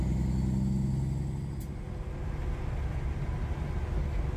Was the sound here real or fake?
real